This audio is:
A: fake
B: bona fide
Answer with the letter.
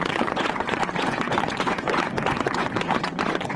A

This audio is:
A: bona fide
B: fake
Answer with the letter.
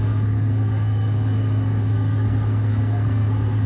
B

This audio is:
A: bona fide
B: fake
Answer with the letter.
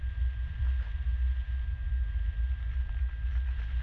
A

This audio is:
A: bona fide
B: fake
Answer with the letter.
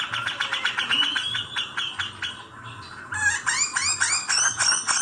A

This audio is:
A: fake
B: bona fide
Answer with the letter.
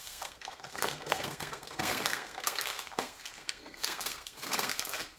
A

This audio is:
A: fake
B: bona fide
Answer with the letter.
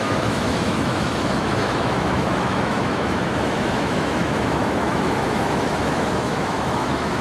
A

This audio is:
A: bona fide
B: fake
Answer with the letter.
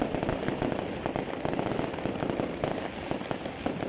A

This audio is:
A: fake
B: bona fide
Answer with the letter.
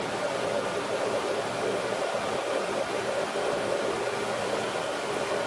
B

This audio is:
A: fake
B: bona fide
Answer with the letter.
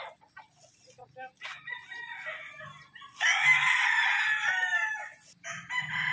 B